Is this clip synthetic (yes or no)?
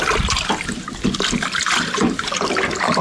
no